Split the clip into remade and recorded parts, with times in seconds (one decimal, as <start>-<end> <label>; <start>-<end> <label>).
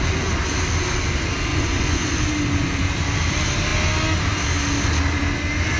0.0-1.5 recorded; 1.5-2.2 remade; 2.2-5.8 recorded